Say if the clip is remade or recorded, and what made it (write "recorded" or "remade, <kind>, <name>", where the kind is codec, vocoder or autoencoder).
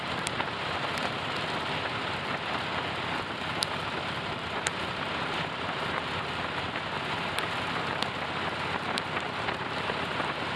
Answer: remade, vocoder, BigVGAN v2